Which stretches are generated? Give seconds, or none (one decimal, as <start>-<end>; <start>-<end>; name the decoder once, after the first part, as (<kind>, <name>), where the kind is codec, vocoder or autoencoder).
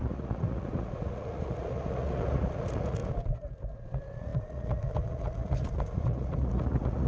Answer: 0.0-3.0 (vocoder, Vocos); 3.6-7.1